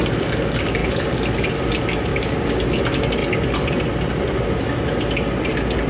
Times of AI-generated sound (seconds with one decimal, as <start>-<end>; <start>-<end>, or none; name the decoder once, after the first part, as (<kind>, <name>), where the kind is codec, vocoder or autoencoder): 2.1-2.8 (codec, DAC)